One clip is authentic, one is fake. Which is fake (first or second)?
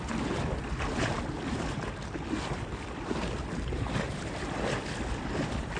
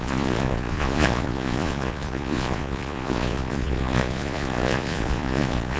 second